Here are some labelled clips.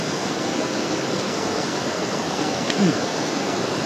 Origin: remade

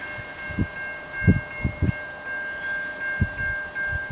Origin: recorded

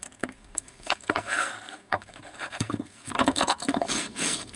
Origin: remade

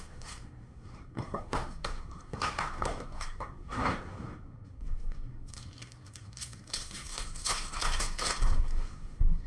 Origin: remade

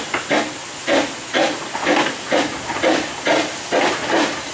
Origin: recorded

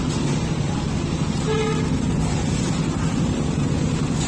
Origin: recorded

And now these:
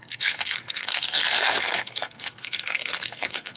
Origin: remade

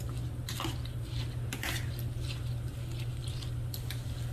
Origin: recorded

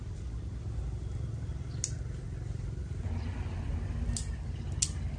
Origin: recorded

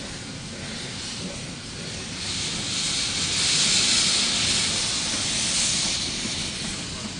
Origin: recorded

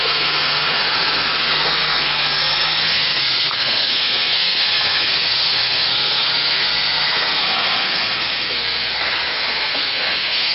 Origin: remade